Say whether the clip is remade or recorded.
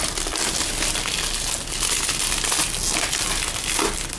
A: recorded